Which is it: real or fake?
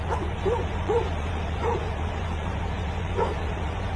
fake